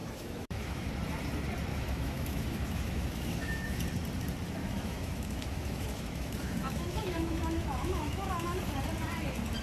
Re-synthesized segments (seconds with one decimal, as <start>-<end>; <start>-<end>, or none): 0.0-0.9; 1.7-3.8; 4.6-8.6